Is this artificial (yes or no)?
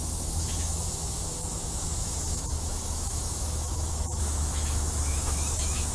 yes